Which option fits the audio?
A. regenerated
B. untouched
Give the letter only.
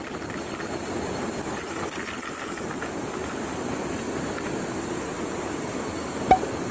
B